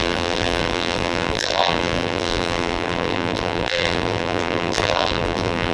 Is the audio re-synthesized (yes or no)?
yes